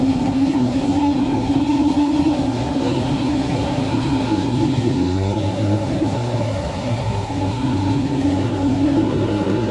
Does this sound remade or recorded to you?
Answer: remade